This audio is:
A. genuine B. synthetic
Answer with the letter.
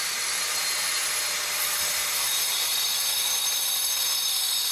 B